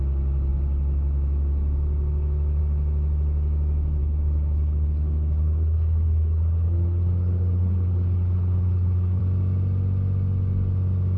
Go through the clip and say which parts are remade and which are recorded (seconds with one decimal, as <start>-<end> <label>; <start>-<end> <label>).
0.0-4.0 recorded; 4.0-9.2 remade; 9.2-11.2 recorded